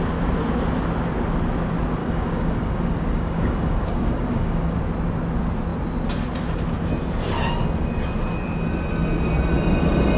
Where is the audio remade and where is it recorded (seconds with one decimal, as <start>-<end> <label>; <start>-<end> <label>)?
0.0-2.0 recorded; 2.0-4.8 remade; 4.8-10.2 recorded